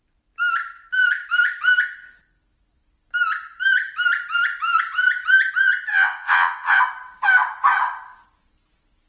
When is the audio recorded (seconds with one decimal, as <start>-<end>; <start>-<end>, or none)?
0.0-5.9; 6.8-9.1

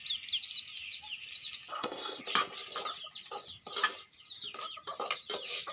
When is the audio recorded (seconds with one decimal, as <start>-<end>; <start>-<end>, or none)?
0.0-1.7; 2.2-5.7

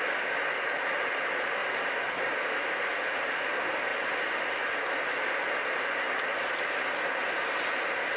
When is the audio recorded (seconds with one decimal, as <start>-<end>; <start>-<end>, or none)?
0.0-8.2

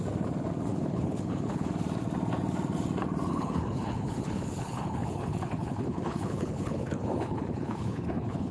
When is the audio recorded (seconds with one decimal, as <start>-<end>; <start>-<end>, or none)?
0.0-0.7; 1.7-3.3

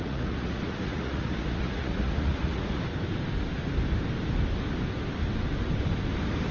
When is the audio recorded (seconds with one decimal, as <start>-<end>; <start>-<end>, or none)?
2.8-6.5

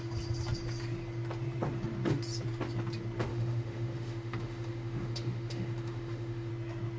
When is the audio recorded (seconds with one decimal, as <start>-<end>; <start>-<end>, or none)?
0.0-3.3; 6.5-7.0

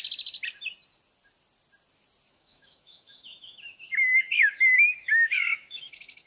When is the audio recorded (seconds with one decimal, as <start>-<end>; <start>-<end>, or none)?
0.0-2.3